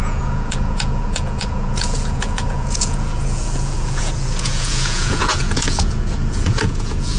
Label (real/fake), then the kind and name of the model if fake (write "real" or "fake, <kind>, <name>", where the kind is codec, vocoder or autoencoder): fake, vocoder, Vocos